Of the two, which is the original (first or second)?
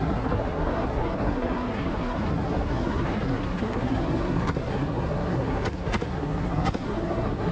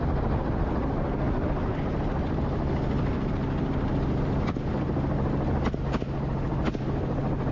second